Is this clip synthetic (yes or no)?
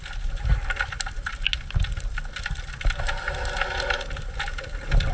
no